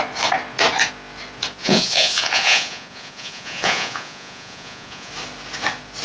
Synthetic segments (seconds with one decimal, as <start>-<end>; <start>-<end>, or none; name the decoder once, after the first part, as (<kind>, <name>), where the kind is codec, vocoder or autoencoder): 1.6-5.1 (vocoder, Vocos)